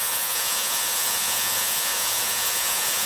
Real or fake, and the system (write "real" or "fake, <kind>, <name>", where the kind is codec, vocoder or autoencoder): fake, vocoder, Vocos